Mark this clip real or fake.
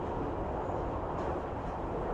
real